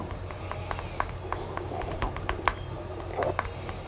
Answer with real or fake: real